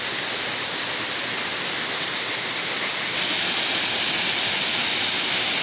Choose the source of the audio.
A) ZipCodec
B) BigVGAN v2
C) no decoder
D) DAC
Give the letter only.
C